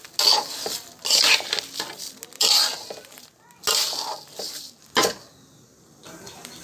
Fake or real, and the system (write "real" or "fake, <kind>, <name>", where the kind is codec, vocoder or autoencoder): real